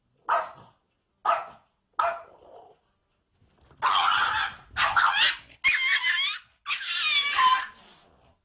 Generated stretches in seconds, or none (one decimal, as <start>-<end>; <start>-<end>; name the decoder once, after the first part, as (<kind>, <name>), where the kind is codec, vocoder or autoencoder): none